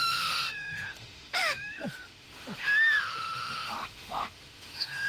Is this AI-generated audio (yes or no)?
yes